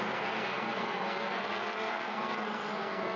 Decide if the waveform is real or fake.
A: fake